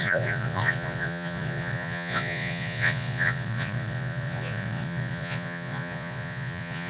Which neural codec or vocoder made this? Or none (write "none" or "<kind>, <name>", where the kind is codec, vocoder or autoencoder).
vocoder, Vocos